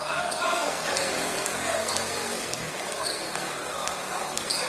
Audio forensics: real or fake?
fake